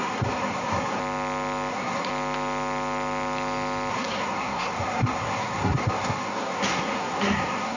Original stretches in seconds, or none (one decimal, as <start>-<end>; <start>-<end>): 1.0-1.7; 2.1-3.9